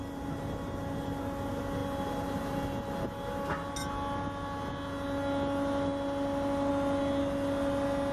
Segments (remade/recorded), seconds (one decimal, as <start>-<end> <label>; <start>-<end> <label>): 0.0-8.1 recorded